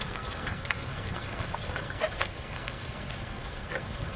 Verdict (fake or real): fake